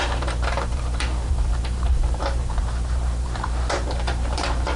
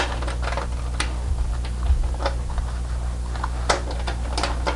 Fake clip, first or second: first